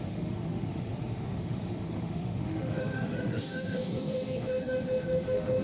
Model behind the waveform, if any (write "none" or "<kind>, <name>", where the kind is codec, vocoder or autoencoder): autoencoder, DAC-VAE